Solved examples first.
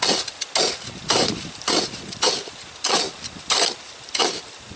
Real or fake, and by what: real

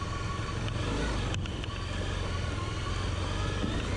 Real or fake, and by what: real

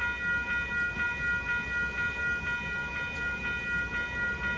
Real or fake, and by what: real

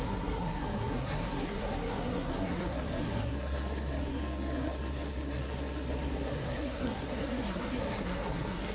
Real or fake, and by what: fake, codec, SNAC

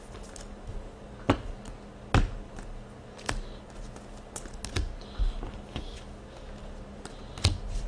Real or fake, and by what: real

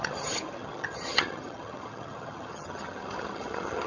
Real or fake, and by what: fake, vocoder, HiFi-GAN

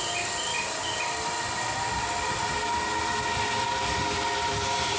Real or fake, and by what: real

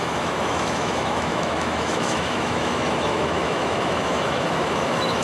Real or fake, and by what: fake, autoencoder, DAC-VAE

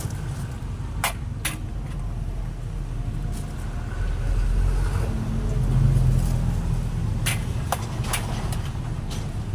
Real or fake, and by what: real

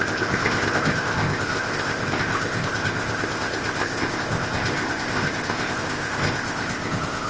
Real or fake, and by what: fake, codec, ZipCodec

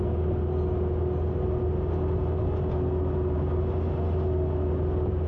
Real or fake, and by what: real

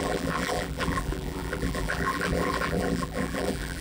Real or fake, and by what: fake, vocoder, BigVGAN v2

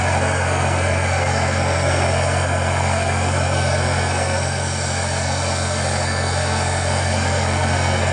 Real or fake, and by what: fake, codec, SNAC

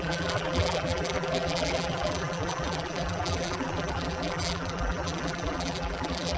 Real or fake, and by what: fake, vocoder, BigVGAN v2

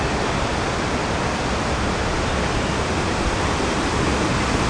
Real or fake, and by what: real